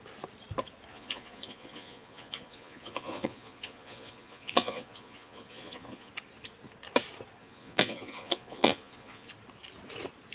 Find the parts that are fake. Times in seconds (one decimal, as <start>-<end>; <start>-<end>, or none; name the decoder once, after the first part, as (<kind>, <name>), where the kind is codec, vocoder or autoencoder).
0.9-6.1 (vocoder, Vocos); 7.4-9.3